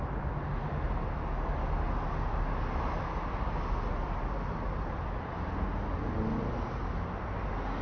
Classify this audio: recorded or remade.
recorded